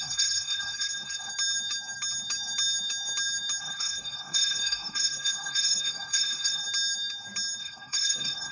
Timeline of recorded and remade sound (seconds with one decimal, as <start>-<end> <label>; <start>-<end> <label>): 0.0-1.3 remade; 1.3-3.6 recorded; 3.6-6.6 remade; 6.6-7.6 recorded; 7.6-8.5 remade